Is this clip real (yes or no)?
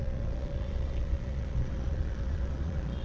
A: no